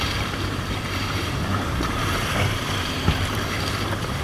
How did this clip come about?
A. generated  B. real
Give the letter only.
A